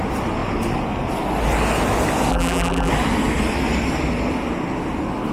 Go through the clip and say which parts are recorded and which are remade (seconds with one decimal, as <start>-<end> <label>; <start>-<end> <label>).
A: 0.0-2.3 recorded; 2.3-2.9 remade; 2.9-5.3 recorded